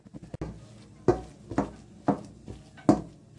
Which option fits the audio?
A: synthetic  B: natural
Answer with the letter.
B